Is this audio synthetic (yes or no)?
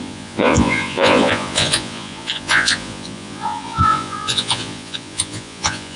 yes